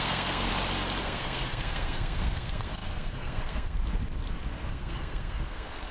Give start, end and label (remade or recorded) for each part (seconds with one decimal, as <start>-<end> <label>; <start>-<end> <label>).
0.0-0.5 remade; 0.5-1.0 recorded; 1.0-3.8 remade; 3.8-4.7 recorded; 4.7-5.9 remade